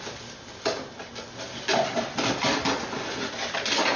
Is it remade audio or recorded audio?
recorded